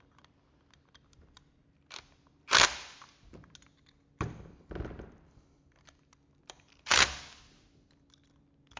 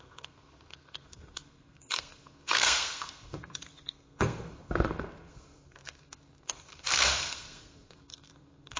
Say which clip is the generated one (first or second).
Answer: second